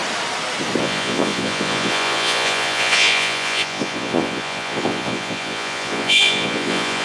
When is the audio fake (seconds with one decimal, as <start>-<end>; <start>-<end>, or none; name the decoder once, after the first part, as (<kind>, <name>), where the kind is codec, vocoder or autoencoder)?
0.8-7.0 (vocoder, Vocos)